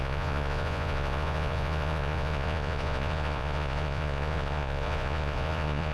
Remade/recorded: remade